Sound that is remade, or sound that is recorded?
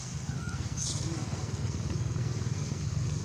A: remade